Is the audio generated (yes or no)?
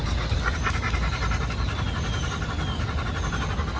no